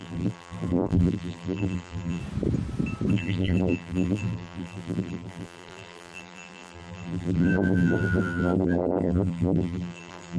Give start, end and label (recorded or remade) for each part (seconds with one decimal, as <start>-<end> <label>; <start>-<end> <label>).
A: 0.0-2.2 remade; 2.2-3.1 recorded; 3.1-10.4 remade